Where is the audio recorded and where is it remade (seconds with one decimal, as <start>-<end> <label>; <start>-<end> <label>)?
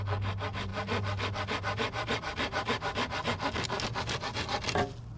0.0-5.2 recorded